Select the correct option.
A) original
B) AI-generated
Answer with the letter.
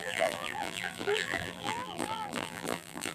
B